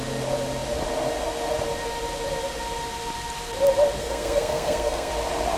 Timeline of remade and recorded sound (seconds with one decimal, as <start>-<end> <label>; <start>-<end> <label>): 0.0-4.0 recorded; 4.0-5.1 remade; 5.1-5.6 recorded